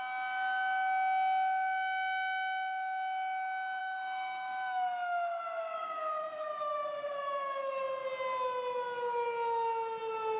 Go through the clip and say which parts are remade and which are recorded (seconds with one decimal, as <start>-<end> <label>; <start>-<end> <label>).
0.0-3.8 recorded; 3.8-7.8 remade; 7.8-10.4 recorded